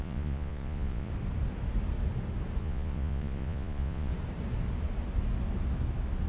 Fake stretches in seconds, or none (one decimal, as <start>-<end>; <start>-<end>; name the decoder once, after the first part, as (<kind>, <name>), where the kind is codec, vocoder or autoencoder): 0.0-1.1 (vocoder, Vocos); 2.6-4.1

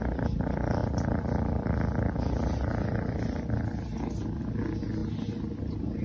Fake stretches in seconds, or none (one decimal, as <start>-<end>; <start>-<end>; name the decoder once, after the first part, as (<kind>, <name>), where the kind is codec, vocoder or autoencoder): none

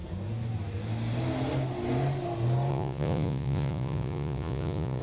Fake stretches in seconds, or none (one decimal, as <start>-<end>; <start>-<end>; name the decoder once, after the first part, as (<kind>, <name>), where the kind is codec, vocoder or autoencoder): 2.7-5.0 (vocoder, Vocos)

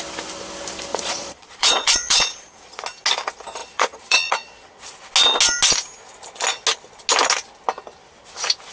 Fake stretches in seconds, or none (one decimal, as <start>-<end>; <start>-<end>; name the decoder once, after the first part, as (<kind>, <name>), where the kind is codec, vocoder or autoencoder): 0.9-2.8 (vocoder, Vocos); 3.6-4.8

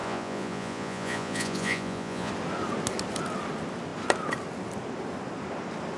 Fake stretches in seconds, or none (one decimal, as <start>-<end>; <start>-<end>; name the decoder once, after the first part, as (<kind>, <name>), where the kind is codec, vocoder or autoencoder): 0.0-2.3 (vocoder, Vocos)

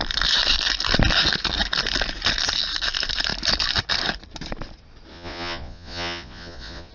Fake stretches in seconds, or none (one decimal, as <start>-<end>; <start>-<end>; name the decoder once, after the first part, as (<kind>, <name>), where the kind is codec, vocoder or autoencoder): 5.1-6.9 (vocoder, Vocos)

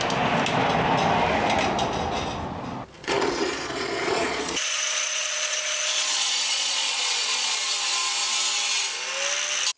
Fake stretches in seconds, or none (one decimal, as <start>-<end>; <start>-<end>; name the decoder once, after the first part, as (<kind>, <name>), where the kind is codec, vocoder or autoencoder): 3.0-7.6 (vocoder, Vocos)

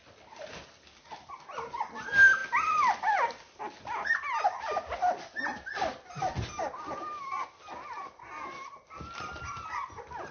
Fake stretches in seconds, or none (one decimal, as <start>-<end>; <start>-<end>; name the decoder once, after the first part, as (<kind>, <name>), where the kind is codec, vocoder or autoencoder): none